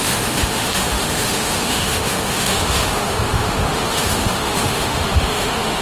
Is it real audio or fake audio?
fake